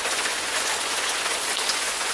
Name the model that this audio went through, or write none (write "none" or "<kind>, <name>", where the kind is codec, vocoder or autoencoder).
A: vocoder, Vocos